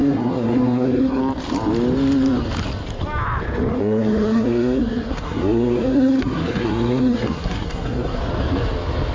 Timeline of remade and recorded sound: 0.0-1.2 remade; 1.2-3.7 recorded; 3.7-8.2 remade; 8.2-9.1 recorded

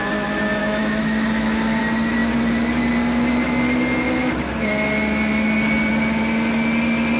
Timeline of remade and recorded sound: 0.0-0.6 recorded; 0.6-1.8 remade; 1.8-7.2 recorded

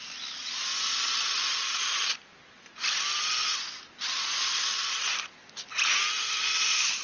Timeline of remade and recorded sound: 0.0-7.0 recorded

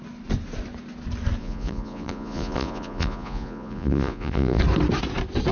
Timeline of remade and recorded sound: 0.0-1.4 recorded; 1.4-4.6 remade; 4.6-5.5 recorded

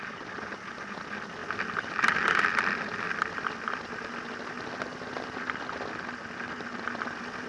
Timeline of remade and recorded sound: 0.0-7.5 recorded